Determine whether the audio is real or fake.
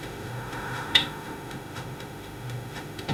fake